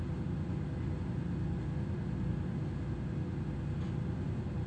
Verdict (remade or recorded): recorded